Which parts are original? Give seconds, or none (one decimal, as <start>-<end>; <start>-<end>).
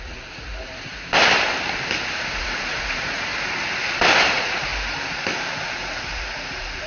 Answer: 0.9-2.3; 3.3-4.3; 4.7-5.5